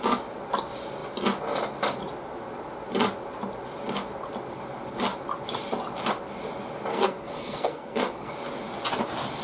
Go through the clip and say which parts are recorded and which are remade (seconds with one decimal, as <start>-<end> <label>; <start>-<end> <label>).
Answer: 0.0-6.9 recorded; 6.9-8.3 remade; 8.3-9.4 recorded